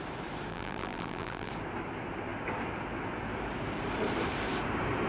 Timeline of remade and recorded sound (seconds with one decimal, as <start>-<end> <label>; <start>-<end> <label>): 0.0-0.5 recorded; 0.5-1.5 remade; 1.5-5.1 recorded

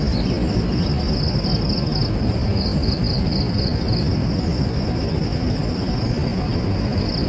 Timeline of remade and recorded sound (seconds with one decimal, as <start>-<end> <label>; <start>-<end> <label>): 0.0-7.3 recorded

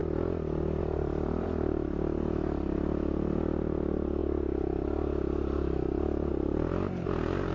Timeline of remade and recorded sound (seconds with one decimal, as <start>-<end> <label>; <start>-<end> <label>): 0.0-0.8 recorded; 0.8-4.2 remade; 4.2-6.3 recorded; 6.3-7.5 remade

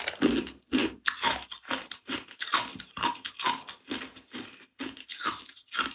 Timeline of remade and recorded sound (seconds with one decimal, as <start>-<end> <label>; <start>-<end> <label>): 0.0-0.8 recorded; 0.8-3.4 remade; 3.4-5.9 recorded

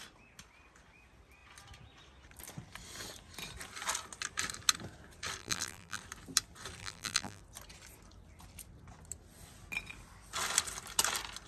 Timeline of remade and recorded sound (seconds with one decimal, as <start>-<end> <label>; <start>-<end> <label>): 0.0-5.4 recorded; 5.4-6.0 remade; 6.0-6.8 recorded; 6.8-7.4 remade; 7.4-11.5 recorded

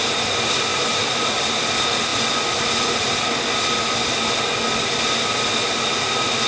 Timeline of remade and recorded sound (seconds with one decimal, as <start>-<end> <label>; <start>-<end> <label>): 0.0-0.7 recorded; 0.7-1.5 remade; 1.5-6.5 recorded

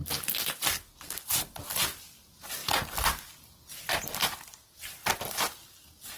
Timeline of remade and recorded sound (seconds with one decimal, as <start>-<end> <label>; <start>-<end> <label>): 0.0-6.2 recorded

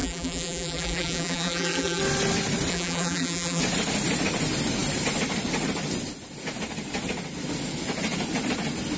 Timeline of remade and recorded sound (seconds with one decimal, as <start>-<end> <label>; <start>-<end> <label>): 0.0-2.0 remade; 2.0-2.7 recorded; 2.7-3.6 remade; 3.6-9.0 recorded